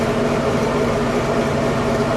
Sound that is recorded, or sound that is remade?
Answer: remade